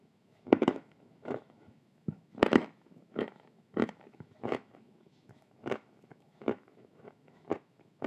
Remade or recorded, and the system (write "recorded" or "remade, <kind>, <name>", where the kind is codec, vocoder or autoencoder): remade, autoencoder, DAC-VAE